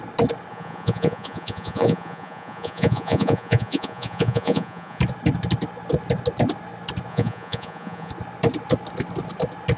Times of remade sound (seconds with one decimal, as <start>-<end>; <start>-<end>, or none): 0.5-5.0; 7.1-8.1